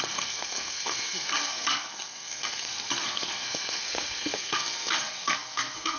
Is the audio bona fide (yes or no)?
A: no